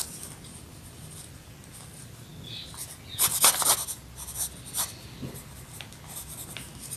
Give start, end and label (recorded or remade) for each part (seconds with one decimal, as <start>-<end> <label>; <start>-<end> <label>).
0.0-7.0 recorded